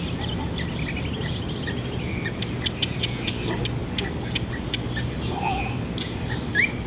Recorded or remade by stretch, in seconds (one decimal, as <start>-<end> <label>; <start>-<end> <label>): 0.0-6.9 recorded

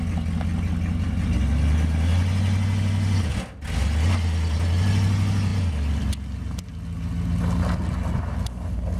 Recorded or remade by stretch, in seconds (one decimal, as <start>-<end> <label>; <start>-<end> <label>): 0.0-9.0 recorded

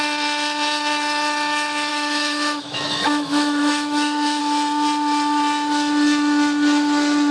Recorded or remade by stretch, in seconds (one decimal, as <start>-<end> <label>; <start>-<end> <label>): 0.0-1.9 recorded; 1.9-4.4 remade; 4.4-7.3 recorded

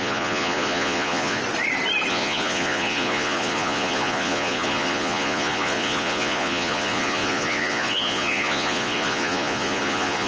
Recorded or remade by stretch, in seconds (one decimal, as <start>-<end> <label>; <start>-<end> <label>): 0.0-1.4 remade; 1.4-2.1 recorded; 2.1-10.3 remade